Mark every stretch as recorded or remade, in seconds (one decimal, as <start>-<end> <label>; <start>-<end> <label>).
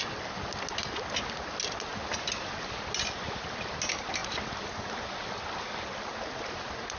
0.0-7.0 recorded